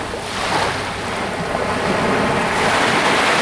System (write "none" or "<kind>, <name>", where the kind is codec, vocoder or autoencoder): none